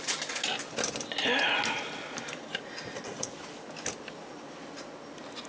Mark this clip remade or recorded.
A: recorded